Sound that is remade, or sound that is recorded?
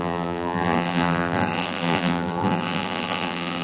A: remade